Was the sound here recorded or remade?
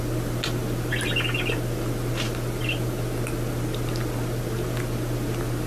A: recorded